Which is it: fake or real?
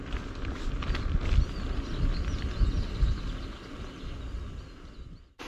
real